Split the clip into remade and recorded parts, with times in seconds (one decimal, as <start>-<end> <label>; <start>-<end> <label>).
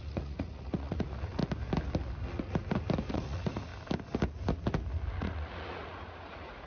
0.0-1.4 remade; 1.4-3.1 recorded; 3.1-3.7 remade; 3.7-5.2 recorded; 5.2-6.7 remade